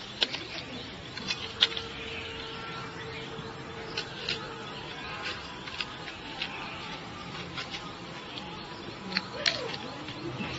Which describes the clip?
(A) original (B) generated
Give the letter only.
A